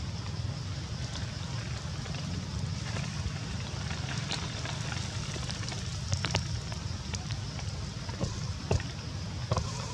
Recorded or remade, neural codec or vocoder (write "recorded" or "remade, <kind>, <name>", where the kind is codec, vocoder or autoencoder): remade, vocoder, BigVGAN v2